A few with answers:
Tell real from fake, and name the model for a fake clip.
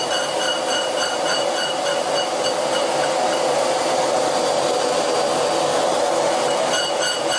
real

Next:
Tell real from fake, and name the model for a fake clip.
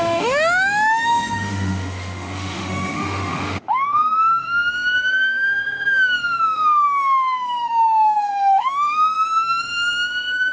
fake, autoencoder, DAC-VAE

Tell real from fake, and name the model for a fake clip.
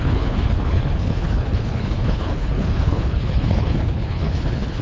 fake, codec, HILCodec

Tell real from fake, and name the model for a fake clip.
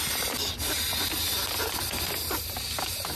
real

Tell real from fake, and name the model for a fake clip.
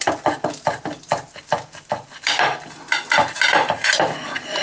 real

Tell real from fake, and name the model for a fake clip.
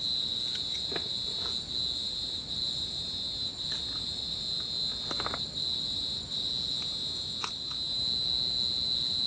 real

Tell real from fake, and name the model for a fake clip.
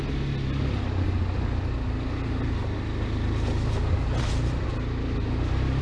real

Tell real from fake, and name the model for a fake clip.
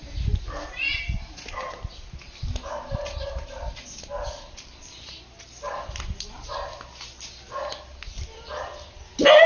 real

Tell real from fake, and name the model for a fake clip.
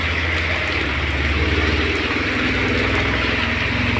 real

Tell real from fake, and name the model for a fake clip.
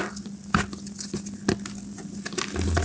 real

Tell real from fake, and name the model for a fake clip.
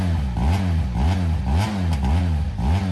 real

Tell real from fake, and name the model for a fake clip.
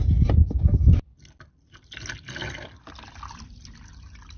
real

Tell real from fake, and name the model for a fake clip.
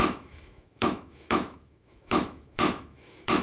fake, autoencoder, DAC-VAE